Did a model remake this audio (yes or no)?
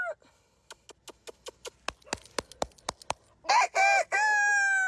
no